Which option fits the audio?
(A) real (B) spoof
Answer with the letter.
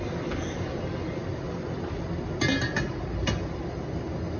A